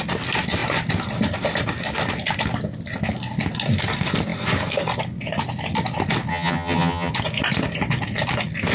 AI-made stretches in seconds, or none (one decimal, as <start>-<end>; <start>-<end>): 6.3-7.1